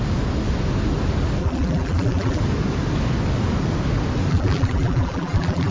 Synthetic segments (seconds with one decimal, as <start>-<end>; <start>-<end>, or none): 1.4-2.4; 4.3-5.7